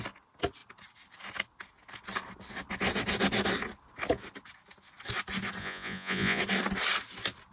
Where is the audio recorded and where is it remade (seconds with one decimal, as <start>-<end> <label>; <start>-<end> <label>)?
0.0-5.6 recorded; 5.6-6.4 remade; 6.4-7.5 recorded